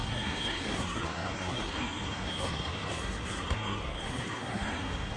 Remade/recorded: remade